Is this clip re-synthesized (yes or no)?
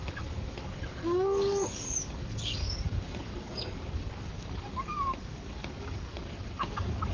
yes